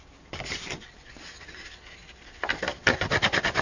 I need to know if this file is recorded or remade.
recorded